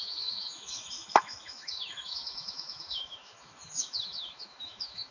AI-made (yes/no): yes